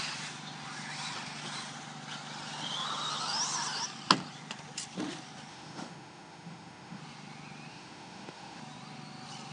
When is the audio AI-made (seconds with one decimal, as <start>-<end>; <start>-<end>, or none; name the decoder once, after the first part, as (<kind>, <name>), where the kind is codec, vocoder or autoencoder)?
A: 5.5-7.0 (autoencoder, DAC-VAE); 7.7-8.6